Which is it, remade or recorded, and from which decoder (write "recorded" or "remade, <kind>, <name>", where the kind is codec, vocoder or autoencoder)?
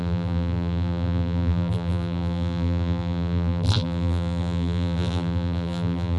remade, vocoder, BigVGAN v2